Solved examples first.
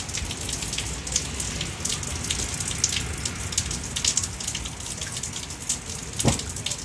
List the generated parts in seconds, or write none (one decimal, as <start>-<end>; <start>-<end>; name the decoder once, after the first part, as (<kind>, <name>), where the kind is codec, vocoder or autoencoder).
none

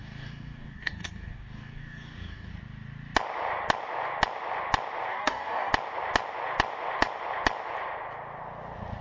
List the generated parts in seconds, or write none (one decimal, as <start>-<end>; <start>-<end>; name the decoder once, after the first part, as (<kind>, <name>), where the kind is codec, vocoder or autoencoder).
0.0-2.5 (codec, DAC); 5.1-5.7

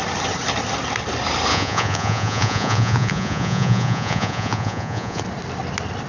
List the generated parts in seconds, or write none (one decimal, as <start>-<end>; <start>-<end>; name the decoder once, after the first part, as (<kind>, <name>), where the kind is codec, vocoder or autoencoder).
1.5-5.2 (vocoder, Vocos)

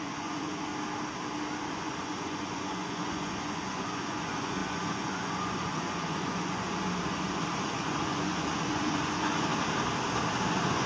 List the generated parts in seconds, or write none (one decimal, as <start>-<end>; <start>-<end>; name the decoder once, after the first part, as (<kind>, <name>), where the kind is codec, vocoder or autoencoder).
0.0-0.7 (vocoder, Vocos); 1.7-9.5; 10.4-10.9

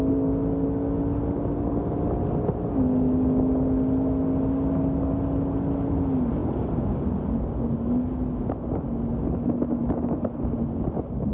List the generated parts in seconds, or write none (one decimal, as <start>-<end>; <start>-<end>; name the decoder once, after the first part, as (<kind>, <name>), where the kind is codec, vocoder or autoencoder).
none

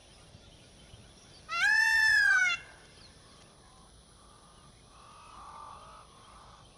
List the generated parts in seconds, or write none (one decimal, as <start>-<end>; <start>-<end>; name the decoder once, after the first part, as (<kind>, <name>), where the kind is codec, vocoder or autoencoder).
0.0-6.8 (vocoder, BigVGAN v2)

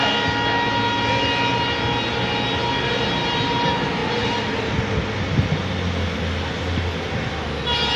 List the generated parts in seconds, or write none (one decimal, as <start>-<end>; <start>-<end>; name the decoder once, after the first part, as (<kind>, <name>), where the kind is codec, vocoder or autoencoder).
none

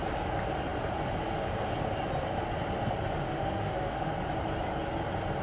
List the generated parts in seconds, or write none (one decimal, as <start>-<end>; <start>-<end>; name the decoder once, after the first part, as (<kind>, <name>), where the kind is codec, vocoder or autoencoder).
3.2-4.1 (autoencoder, DAC-VAE)